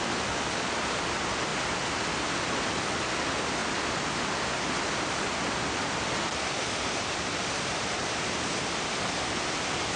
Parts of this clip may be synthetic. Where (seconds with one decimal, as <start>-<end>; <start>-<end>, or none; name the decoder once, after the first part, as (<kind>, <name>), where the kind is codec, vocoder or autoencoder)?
none